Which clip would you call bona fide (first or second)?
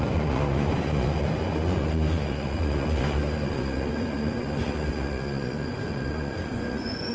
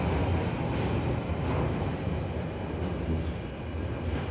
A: second